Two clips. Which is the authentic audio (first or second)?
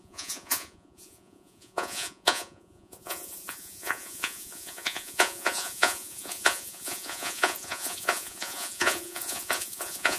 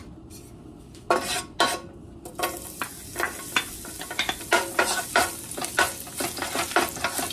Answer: second